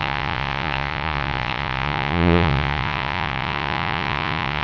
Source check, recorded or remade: remade